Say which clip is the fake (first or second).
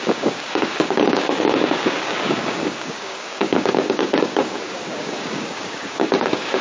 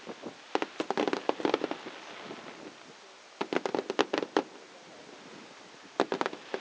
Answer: first